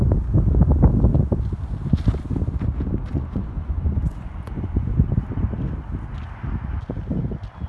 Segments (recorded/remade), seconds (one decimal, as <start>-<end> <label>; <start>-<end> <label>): 0.0-3.1 recorded; 3.1-4.9 remade; 4.9-7.7 recorded